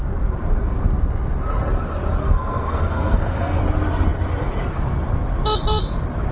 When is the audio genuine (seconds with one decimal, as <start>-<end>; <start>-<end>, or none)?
0.0-2.2; 3.6-6.3